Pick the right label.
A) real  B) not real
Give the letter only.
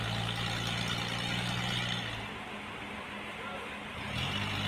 A